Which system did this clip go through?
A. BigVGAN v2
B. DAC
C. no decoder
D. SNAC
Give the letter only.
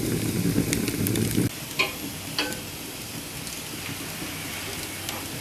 C